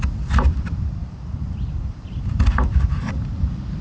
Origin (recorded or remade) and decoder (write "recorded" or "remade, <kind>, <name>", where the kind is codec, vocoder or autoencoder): recorded